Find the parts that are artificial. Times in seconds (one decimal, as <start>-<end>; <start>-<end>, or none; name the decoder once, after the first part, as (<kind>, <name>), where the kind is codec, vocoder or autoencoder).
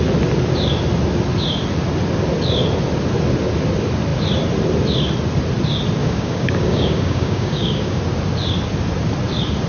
6.0-8.0 (codec, DAC)